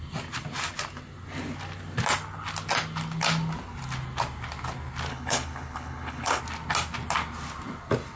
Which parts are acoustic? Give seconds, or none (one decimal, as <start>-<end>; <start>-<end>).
0.0-5.1; 6.4-8.2